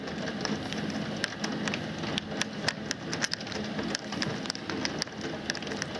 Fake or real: real